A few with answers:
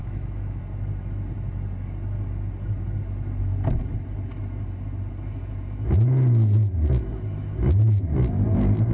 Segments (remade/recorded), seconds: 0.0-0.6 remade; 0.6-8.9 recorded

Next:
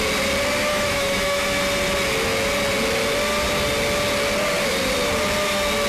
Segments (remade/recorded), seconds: 0.0-0.7 recorded; 0.7-1.6 remade; 1.6-5.9 recorded

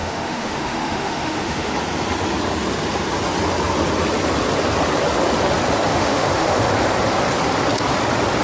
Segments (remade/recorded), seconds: 0.0-1.7 remade; 1.7-5.9 recorded; 5.9-6.7 remade; 6.7-8.4 recorded

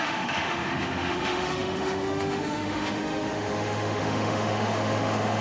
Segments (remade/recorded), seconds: 0.0-5.4 remade

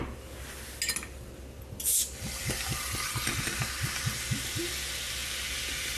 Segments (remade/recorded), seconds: 0.0-6.0 recorded

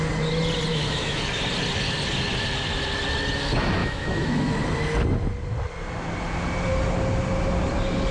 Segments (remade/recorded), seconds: 0.0-0.7 recorded; 0.7-1.2 remade; 1.2-3.8 recorded; 3.8-4.5 remade; 4.5-8.1 recorded